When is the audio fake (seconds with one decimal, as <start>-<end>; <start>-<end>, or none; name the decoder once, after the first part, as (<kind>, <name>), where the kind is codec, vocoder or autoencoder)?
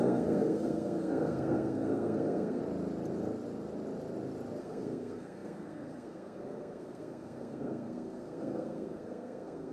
0.0-2.6 (codec, SNAC); 4.6-9.7